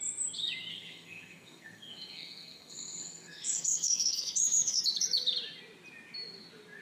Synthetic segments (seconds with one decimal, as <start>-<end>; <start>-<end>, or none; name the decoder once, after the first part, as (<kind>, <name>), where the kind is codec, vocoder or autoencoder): 0.7-4.8 (codec, SNAC)